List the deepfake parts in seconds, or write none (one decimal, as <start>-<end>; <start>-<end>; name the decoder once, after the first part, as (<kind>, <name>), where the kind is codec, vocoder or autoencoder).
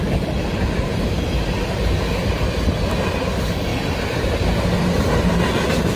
none